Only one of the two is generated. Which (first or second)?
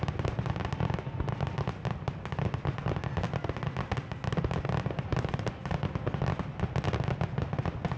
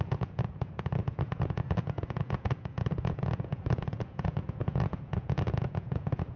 second